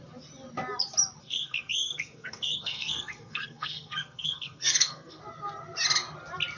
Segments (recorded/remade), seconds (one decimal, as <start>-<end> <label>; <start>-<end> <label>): 0.0-1.2 recorded; 1.2-5.2 remade; 5.2-6.6 recorded